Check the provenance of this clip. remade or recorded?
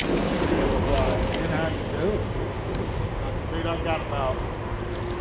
recorded